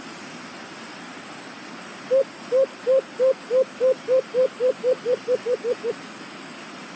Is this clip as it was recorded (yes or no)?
yes